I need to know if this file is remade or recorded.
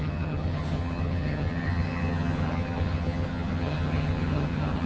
remade